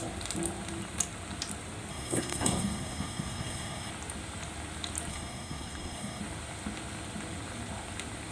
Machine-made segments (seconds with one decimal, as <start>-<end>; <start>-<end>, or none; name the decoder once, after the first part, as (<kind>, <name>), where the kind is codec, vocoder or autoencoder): 1.9-3.9 (codec, SNAC); 5.1-6.2